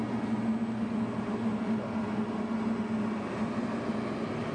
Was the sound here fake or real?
real